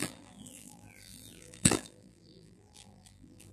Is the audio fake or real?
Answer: fake